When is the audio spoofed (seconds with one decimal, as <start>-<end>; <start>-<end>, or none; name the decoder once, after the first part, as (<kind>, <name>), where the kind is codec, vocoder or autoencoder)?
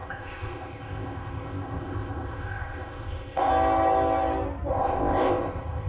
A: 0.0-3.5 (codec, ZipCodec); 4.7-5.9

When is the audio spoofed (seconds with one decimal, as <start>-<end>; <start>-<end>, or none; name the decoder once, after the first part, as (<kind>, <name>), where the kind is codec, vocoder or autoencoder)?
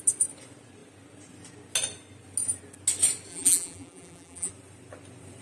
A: 3.3-4.5 (vocoder, BigVGAN v2)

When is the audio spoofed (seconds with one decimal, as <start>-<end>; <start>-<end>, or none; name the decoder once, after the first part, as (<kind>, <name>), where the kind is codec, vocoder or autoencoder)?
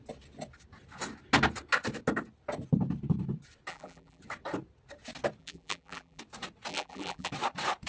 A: 3.7-4.2 (vocoder, BigVGAN v2); 5.4-6.2; 6.7-7.3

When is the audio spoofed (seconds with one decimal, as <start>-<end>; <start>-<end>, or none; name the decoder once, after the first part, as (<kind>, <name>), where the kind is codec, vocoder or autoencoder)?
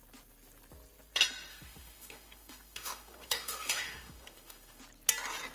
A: 1.5-4.8 (autoencoder, DAC-VAE)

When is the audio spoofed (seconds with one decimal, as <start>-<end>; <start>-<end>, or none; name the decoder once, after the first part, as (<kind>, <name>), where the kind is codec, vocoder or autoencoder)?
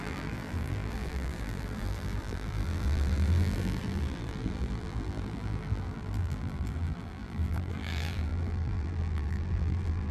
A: 0.0-10.1 (vocoder, BigVGAN v2)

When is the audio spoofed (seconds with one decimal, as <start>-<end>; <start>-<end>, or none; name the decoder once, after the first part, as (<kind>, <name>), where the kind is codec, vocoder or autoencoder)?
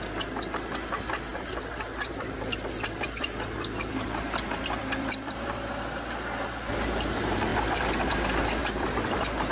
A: 1.3-5.7 (vocoder, BigVGAN v2); 8.6-9.5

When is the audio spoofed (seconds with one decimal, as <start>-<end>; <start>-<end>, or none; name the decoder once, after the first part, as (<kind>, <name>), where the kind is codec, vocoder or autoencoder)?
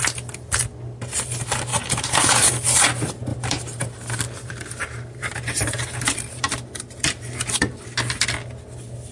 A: 1.7-2.5 (vocoder, BigVGAN v2); 3.3-7.8